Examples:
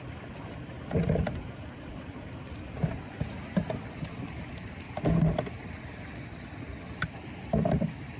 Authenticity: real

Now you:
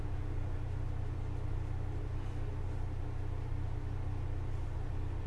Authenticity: real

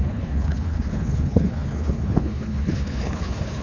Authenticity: fake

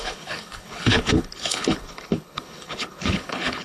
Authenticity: fake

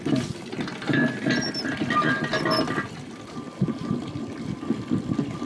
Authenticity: real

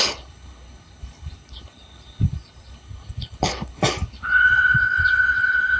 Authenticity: fake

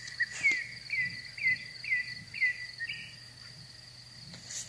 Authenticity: real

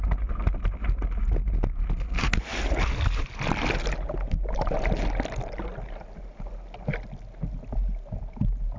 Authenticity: real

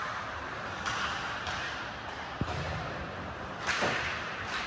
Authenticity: real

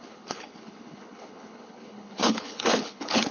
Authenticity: fake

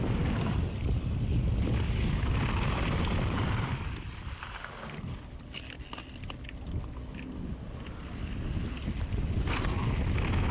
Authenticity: real